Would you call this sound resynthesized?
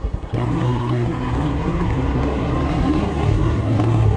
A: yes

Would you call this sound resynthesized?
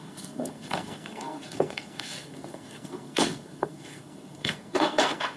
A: yes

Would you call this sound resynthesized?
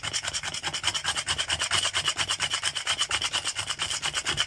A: no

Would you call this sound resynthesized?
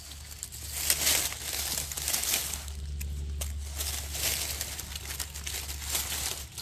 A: no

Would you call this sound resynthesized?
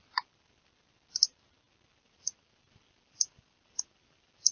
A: no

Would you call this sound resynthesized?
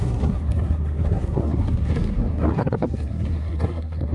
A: yes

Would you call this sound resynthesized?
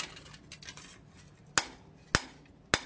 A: no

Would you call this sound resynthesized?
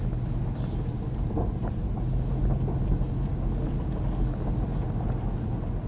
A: no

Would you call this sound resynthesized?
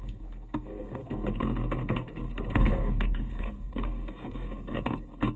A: yes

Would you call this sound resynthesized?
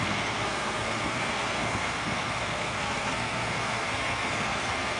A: yes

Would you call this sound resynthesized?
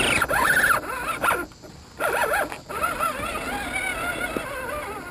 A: no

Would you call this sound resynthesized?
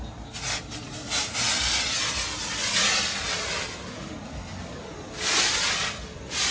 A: no